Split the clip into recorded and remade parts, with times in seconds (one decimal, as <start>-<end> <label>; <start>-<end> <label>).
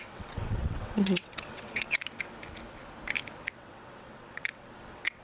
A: 0.0-2.0 remade; 2.0-3.5 recorded; 3.5-5.2 remade